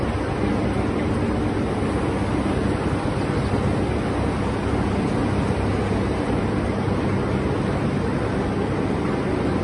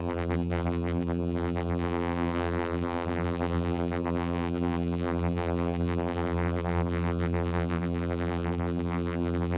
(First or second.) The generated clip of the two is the second